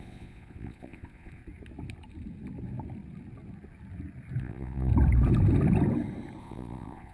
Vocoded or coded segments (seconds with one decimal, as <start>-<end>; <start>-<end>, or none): 0.0-1.4; 4.4-4.9; 6.4-7.1